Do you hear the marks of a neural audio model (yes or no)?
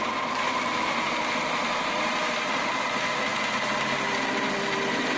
yes